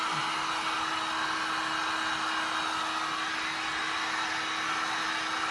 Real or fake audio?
real